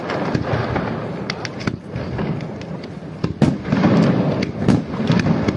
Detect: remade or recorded recorded